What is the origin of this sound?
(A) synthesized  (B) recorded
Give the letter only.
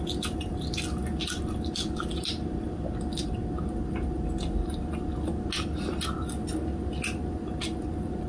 B